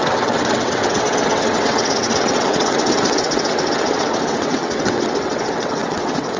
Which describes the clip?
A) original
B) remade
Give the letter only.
B